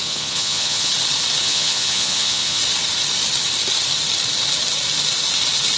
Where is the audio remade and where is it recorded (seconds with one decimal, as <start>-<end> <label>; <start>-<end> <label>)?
0.0-0.9 remade; 0.9-1.4 recorded; 1.4-2.6 remade; 2.6-5.8 recorded